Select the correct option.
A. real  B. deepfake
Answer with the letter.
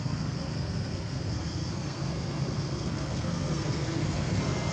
B